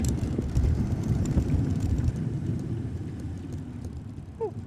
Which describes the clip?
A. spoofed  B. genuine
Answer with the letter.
A